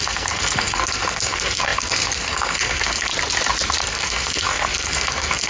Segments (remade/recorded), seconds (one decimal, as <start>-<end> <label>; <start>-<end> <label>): 0.0-3.1 remade; 3.1-3.8 recorded; 3.8-5.5 remade

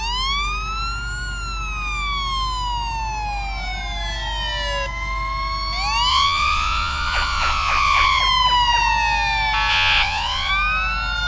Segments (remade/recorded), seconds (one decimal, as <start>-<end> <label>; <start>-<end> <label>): 0.0-6.1 recorded; 6.1-8.2 remade; 8.2-9.7 recorded; 9.7-10.5 remade; 10.5-11.3 recorded